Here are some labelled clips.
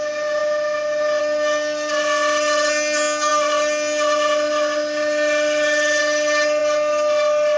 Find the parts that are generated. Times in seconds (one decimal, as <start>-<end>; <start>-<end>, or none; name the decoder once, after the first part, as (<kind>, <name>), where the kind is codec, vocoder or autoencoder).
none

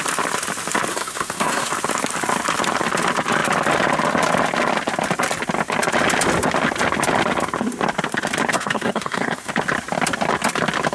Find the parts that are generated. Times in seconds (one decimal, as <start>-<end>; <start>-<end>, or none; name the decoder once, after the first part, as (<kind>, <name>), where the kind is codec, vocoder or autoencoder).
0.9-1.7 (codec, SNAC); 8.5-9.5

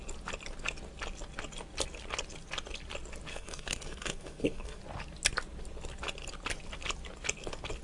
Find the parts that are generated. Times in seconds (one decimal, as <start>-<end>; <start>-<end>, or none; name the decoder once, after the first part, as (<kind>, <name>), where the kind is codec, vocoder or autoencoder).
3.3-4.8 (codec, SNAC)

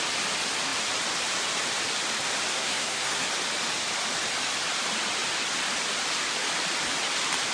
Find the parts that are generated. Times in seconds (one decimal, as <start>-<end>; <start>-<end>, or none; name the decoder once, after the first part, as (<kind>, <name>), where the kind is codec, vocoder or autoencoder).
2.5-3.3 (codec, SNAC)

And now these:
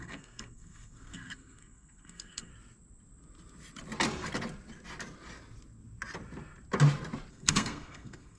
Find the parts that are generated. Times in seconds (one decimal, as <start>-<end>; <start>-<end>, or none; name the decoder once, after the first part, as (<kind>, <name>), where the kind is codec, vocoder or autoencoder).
0.0-2.5 (codec, SNAC); 7.3-8.4

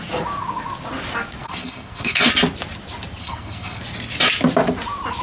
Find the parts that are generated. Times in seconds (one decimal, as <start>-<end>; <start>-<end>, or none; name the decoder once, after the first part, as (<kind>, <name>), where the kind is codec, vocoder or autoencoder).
1.4-2.3 (codec, SNAC); 3.2-3.8

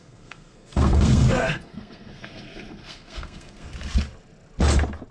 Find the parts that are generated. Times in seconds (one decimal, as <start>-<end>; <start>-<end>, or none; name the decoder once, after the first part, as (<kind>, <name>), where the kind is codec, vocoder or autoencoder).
0.0-3.7 (codec, SNAC)

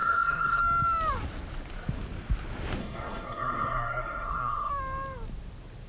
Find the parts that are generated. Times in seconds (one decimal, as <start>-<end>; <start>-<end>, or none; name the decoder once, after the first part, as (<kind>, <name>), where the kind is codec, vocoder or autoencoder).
0.0-0.6 (codec, SNAC); 2.8-4.7